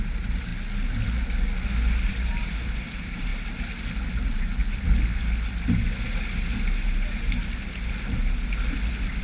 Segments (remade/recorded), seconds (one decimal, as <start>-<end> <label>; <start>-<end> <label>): 0.0-0.5 remade; 0.5-2.1 recorded; 2.1-3.3 remade; 3.3-4.1 recorded; 4.1-4.6 remade; 4.6-9.2 recorded